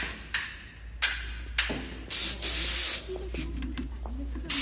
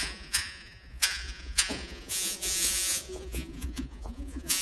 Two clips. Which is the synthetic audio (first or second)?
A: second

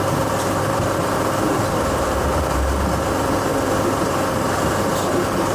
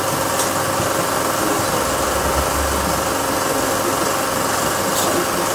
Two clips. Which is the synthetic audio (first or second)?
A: first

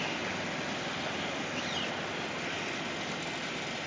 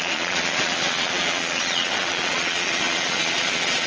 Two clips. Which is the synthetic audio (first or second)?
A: second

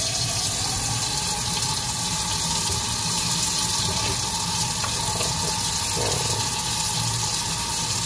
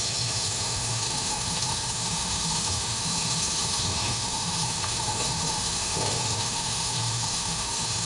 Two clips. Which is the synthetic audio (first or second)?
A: second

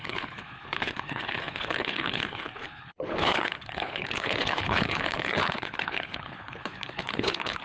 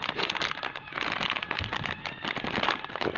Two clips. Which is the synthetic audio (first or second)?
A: first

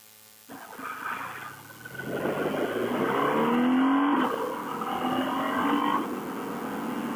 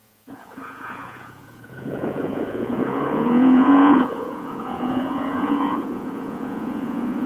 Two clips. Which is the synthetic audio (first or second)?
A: second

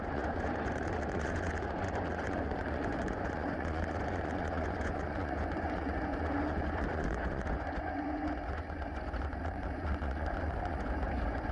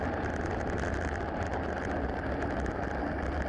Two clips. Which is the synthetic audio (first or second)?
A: first